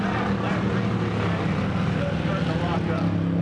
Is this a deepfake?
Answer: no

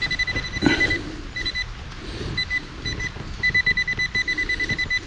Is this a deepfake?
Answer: no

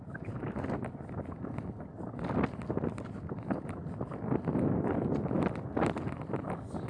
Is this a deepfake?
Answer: no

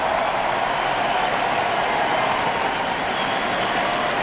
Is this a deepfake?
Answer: no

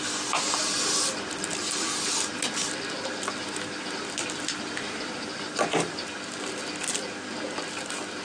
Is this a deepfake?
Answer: no